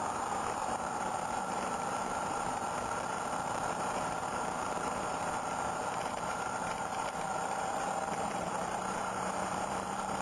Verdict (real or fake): fake